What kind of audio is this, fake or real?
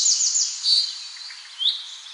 real